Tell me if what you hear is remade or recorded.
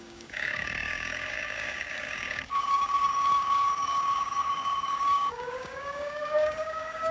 remade